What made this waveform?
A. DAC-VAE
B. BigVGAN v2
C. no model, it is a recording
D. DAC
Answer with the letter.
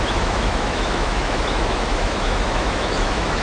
A